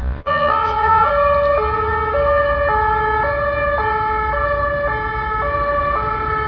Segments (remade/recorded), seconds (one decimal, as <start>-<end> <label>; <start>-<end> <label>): 0.0-1.1 remade; 1.1-6.5 recorded